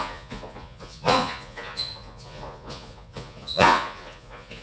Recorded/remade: remade